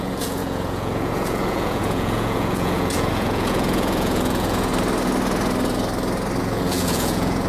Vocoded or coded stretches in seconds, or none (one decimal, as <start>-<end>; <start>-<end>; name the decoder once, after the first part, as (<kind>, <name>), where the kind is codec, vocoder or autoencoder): 0.0-4.7 (vocoder, Vocos); 6.4-7.5